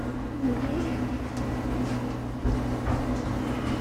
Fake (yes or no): no